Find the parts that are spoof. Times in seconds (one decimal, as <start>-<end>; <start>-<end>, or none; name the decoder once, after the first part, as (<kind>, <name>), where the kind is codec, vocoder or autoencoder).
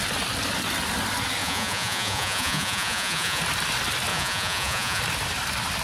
1.4-3.4 (vocoder, Vocos); 4.1-5.0